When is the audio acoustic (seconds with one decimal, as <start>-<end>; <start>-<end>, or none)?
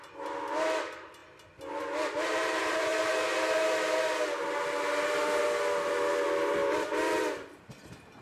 2.9-5.9